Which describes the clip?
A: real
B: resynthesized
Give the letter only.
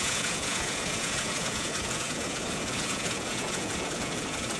B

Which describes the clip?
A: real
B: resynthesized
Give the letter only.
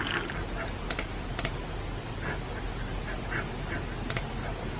A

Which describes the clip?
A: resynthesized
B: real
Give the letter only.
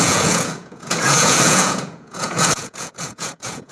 A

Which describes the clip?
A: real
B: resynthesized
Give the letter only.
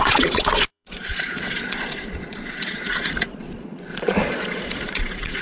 B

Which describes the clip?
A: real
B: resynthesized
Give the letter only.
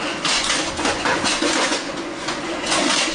B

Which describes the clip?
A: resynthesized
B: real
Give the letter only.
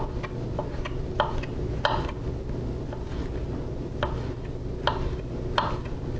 B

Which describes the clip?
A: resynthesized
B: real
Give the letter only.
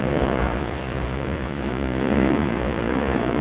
A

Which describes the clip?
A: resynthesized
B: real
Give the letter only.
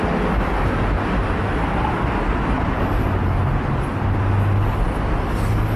B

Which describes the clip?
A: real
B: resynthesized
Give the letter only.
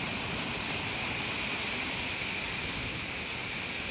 A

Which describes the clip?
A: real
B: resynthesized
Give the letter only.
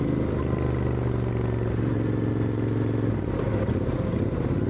A